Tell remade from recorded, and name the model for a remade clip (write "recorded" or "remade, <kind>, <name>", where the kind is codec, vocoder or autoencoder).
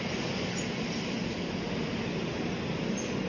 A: recorded